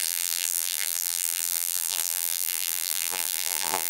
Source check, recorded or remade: remade